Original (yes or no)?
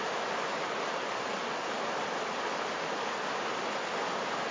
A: yes